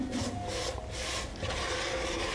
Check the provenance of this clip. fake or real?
real